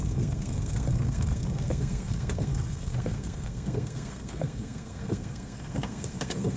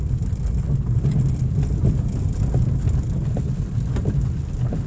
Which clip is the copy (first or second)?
first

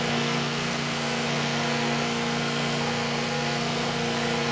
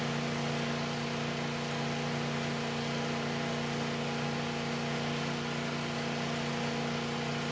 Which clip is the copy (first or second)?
first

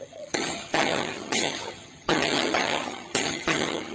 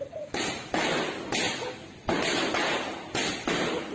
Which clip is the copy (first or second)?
first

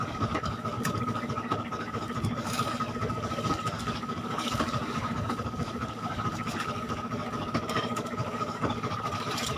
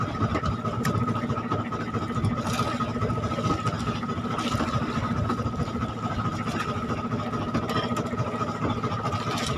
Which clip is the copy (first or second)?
first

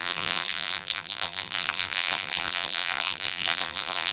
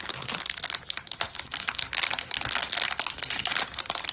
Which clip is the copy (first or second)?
first